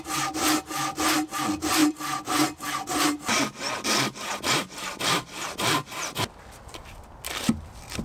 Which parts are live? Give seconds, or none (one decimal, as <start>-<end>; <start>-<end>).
0.0-8.0

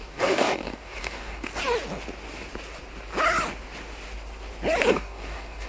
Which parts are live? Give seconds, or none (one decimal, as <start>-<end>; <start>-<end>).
1.5-4.9

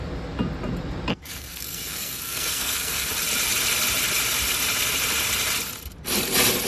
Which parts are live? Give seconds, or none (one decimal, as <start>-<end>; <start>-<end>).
0.0-1.1; 3.1-6.7

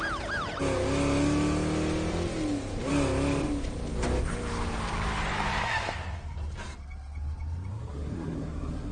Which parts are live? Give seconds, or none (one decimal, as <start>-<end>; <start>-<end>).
0.0-7.7

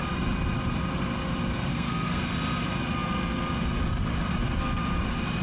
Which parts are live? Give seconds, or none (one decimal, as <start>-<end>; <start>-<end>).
0.0-1.7; 2.2-5.4